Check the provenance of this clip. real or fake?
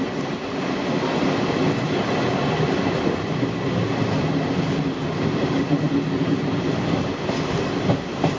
real